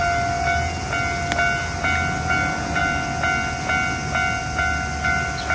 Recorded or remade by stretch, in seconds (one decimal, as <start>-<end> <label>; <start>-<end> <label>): 0.0-5.5 recorded